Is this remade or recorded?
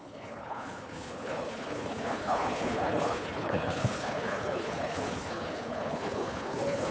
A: remade